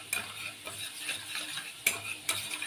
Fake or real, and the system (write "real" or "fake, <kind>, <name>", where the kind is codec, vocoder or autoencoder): real